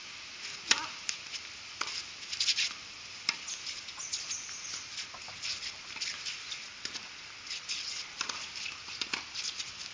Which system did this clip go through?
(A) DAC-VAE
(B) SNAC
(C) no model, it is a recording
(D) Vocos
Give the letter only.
C